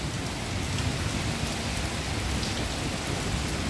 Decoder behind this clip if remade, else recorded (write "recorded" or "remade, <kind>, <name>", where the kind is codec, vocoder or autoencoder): recorded